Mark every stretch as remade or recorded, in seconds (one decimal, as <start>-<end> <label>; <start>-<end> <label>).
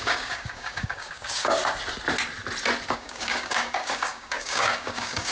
0.0-1.6 remade; 1.6-2.9 recorded; 2.9-5.3 remade